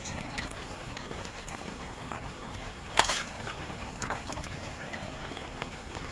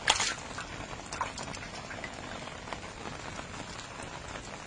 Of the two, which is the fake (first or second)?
first